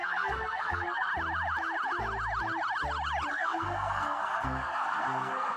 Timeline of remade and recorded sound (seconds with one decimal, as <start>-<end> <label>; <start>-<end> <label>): 0.0-1.1 remade; 1.1-3.3 recorded; 3.3-5.6 remade